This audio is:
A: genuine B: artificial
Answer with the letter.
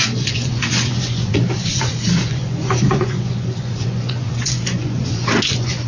B